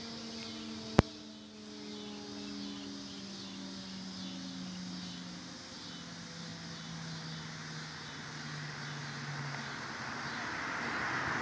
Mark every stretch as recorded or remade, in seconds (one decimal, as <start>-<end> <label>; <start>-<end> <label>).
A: 0.0-11.4 recorded